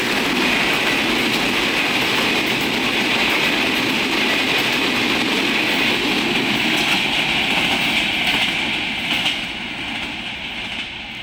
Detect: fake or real real